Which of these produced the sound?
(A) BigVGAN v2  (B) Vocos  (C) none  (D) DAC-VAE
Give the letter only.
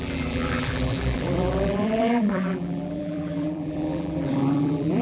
A